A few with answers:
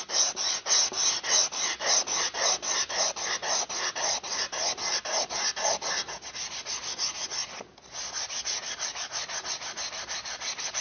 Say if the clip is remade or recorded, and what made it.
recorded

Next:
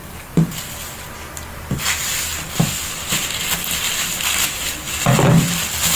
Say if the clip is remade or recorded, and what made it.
recorded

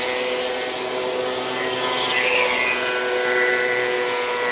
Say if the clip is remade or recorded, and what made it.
recorded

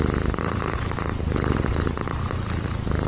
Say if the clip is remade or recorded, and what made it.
recorded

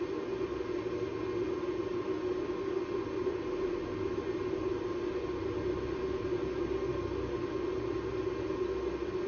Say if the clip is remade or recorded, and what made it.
recorded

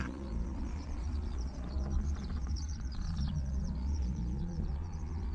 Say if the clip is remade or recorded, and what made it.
remade, vocoder, Vocos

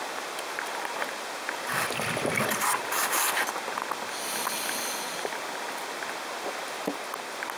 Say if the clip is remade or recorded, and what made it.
recorded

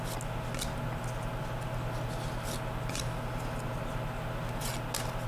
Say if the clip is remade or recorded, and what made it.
recorded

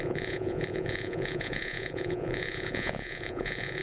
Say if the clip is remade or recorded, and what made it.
remade, vocoder, Vocos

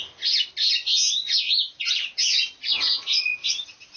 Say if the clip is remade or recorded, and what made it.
recorded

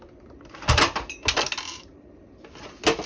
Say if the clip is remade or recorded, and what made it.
recorded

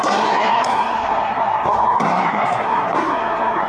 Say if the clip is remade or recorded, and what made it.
remade, codec, SNAC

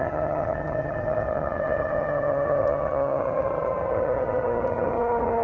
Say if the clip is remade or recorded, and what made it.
remade, vocoder, HiFi-GAN